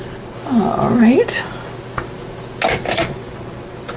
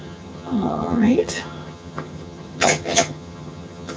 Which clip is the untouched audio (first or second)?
first